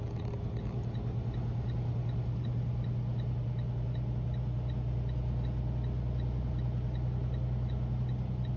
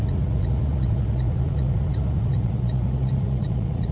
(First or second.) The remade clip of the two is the second